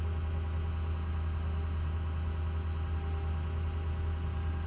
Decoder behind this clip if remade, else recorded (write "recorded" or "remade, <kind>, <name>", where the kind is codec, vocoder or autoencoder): recorded